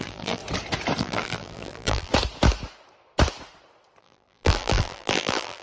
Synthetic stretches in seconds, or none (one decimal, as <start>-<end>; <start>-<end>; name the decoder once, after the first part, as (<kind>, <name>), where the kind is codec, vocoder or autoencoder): 0.0-0.4 (vocoder, BigVGAN v2); 1.0-2.1; 4.0-5.6